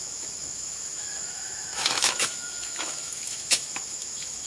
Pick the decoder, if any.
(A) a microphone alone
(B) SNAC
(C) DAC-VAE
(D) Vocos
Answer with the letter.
C